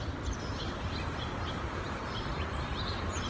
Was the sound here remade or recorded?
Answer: remade